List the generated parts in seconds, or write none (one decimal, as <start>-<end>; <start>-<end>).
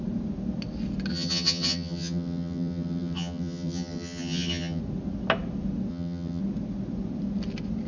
1.1-4.8; 5.9-6.4